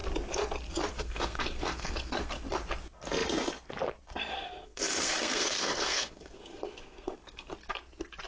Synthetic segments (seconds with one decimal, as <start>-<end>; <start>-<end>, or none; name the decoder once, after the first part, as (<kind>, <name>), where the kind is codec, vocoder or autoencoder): 0.9-2.4 (codec, SNAC); 4.3-7.5